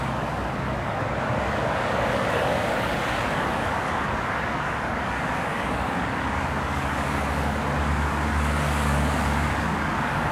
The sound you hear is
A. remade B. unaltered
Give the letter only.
A